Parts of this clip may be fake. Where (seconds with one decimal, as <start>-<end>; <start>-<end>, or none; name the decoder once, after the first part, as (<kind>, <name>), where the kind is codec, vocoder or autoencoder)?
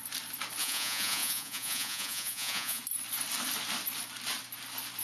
0.6-2.8 (vocoder, Vocos)